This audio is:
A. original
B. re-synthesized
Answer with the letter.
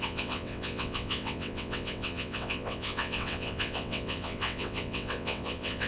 B